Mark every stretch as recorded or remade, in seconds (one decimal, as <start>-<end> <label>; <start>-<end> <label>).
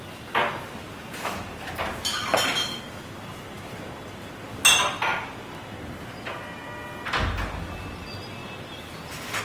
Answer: 0.0-9.4 recorded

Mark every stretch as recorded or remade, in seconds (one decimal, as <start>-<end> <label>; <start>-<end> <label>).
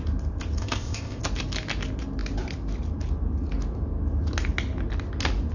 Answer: 0.0-0.6 recorded; 0.6-1.2 remade; 1.2-5.5 recorded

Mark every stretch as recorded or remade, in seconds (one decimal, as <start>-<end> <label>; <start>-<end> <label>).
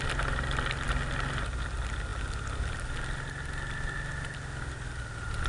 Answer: 0.0-5.5 recorded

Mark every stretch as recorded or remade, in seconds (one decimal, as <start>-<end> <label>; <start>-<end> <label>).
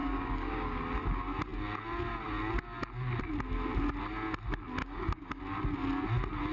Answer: 0.0-0.8 remade; 0.8-4.8 recorded; 4.8-5.4 remade; 5.4-6.5 recorded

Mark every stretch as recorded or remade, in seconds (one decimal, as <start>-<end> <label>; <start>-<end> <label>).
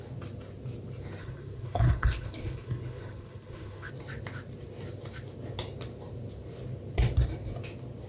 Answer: 0.0-1.2 recorded; 1.2-3.9 remade; 3.9-8.1 recorded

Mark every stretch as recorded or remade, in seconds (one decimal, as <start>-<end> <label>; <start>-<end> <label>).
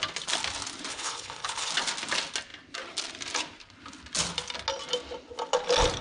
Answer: 0.0-0.9 recorded; 0.9-1.7 remade; 1.7-6.0 recorded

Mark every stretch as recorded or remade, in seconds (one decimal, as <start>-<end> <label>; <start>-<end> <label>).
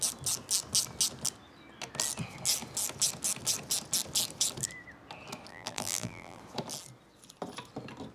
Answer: 0.0-5.5 recorded; 5.5-6.4 remade; 6.4-8.1 recorded